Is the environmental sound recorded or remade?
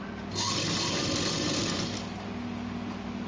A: recorded